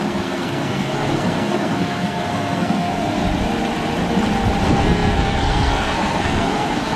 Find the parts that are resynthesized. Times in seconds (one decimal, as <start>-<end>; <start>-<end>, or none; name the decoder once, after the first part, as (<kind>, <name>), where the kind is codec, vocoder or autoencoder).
0.0-3.2 (codec, SNAC); 4.6-7.0